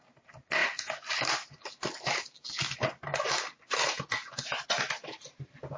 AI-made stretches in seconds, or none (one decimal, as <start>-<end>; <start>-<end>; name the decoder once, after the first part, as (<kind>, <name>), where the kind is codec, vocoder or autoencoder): none